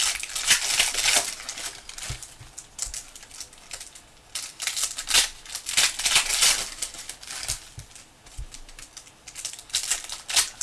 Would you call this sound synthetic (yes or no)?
no